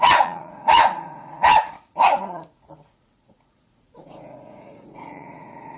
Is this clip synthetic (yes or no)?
yes